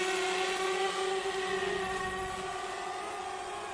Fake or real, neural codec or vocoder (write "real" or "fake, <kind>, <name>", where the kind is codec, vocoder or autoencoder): fake, vocoder, Vocos